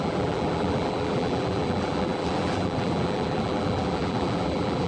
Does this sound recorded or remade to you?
remade